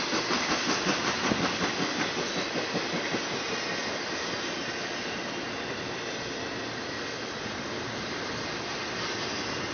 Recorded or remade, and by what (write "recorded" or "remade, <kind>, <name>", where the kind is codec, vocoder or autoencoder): recorded